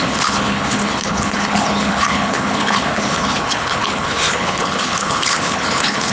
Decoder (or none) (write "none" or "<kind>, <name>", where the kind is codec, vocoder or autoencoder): codec, HILCodec